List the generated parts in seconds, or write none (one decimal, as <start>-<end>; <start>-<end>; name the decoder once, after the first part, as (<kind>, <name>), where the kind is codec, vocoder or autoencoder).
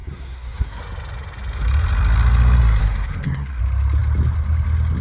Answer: 0.0-0.8 (codec, SNAC); 2.8-3.6